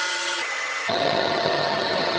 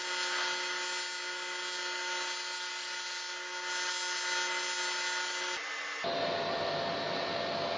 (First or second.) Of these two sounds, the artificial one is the first